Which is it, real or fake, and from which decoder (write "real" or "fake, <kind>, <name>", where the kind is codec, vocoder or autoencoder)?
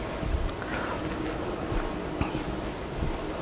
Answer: real